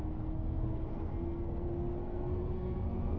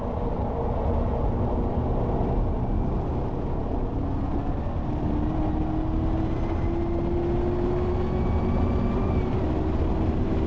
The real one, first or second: second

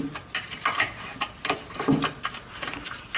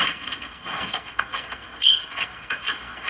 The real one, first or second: first